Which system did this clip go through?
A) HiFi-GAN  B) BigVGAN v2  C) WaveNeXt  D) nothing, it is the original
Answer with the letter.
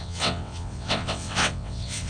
C